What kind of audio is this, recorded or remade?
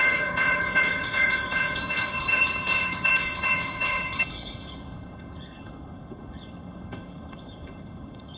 remade